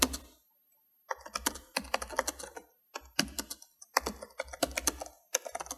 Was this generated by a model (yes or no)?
no